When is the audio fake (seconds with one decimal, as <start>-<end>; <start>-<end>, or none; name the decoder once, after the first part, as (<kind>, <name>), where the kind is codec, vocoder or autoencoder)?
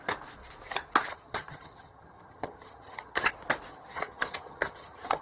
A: 1.1-3.3 (vocoder, HiFi-GAN); 3.7-5.2